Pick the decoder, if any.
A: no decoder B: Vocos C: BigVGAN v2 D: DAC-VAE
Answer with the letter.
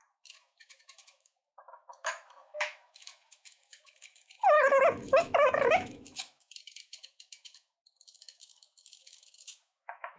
D